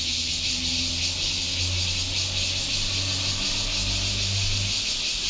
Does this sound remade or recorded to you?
recorded